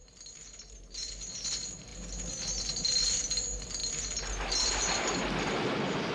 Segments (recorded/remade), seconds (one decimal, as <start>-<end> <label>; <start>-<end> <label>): 0.0-1.1 remade; 1.1-6.1 recorded